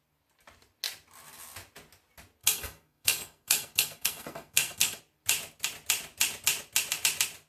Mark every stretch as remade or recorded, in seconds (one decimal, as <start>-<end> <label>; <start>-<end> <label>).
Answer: 0.0-2.4 recorded; 2.4-5.0 remade; 5.0-7.5 recorded